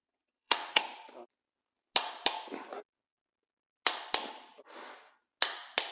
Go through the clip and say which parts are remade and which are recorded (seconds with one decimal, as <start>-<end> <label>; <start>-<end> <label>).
0.0-0.8 remade; 0.8-5.9 recorded